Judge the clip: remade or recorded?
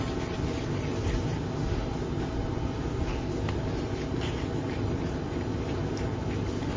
recorded